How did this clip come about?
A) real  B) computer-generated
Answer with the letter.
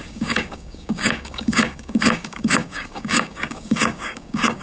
B